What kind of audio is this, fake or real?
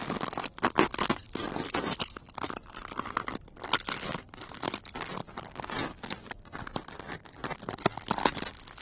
real